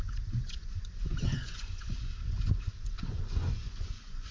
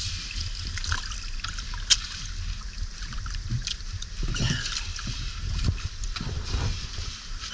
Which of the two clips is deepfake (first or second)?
first